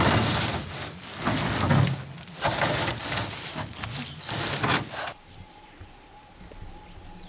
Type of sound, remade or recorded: recorded